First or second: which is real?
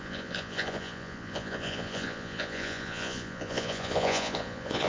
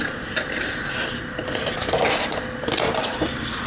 second